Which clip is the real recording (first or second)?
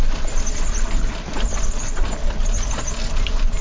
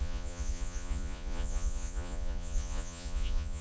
first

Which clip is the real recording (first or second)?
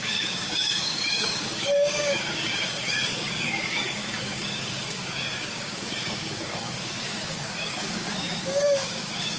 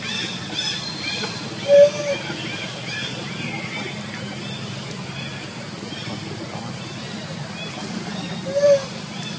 second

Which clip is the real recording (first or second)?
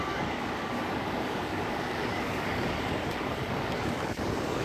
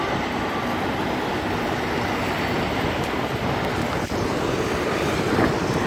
second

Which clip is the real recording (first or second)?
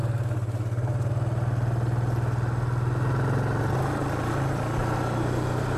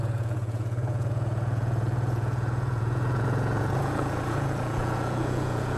first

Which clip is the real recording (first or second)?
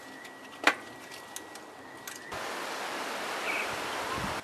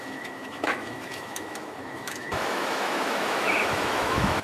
first